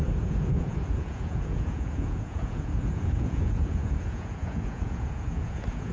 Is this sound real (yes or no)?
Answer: no